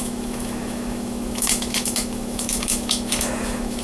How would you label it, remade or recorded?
remade